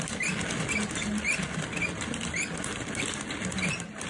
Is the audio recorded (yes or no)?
yes